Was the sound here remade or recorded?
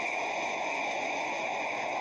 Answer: remade